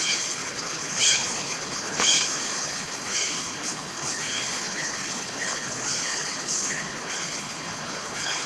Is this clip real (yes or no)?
no